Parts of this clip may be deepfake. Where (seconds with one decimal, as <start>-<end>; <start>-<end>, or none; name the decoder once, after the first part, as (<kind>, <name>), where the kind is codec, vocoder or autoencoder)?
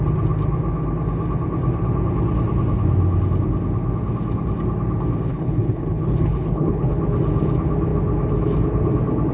5.3-7.0 (codec, HILCodec)